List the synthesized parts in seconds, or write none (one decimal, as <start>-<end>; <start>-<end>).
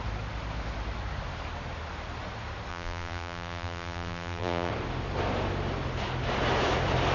2.7-4.7